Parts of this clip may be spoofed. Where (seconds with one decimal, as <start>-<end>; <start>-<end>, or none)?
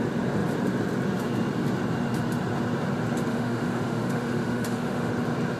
3.3-5.1